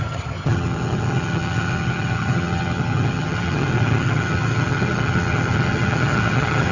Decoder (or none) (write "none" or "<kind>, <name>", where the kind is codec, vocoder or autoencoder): vocoder, HiFi-GAN